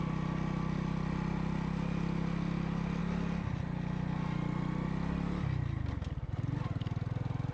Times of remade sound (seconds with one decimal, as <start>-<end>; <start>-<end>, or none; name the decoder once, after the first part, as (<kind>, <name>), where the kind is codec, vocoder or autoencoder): none